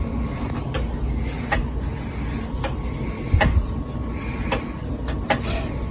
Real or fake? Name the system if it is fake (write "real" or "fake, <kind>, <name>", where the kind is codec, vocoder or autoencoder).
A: real